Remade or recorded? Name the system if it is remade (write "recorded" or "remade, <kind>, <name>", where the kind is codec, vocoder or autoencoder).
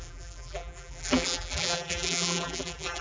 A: remade, vocoder, BigVGAN v2